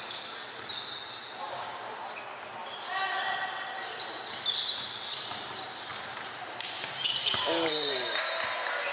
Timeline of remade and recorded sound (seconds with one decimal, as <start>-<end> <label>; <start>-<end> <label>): 0.0-0.4 recorded; 0.4-2.2 remade; 2.2-2.6 recorded; 2.6-4.9 remade; 4.9-5.9 recorded; 5.9-8.2 remade; 8.2-8.9 recorded

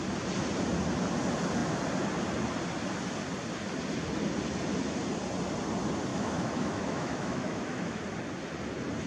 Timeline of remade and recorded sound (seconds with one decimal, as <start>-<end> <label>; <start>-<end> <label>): 0.0-6.1 recorded; 6.1-8.0 remade; 8.0-9.1 recorded